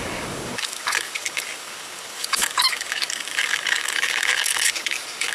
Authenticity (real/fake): fake